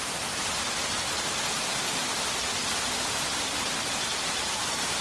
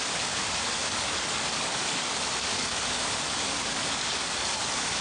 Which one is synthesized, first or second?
second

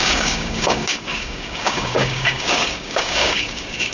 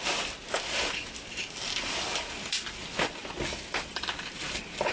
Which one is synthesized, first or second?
first